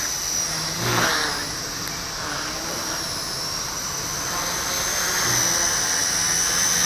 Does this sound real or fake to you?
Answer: real